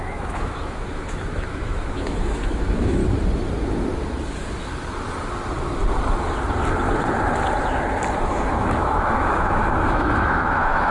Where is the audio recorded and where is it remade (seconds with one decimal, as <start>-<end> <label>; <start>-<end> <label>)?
0.0-3.0 remade; 3.0-8.3 recorded; 8.3-10.9 remade